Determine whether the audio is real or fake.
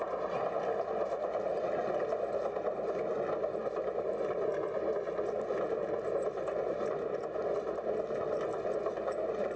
real